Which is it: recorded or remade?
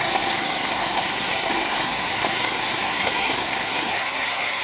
remade